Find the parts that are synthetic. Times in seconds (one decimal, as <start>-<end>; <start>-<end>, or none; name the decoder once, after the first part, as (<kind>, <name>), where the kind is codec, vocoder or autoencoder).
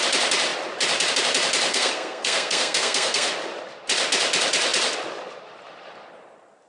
1.7-3.3 (codec, SNAC)